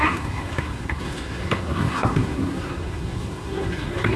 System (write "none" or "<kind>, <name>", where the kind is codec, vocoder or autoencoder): codec, SNAC